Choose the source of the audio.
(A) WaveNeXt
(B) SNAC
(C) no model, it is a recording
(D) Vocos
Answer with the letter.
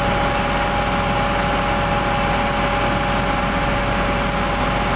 C